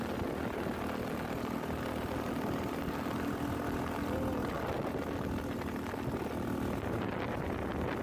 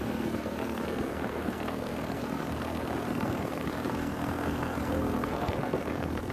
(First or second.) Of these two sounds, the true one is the first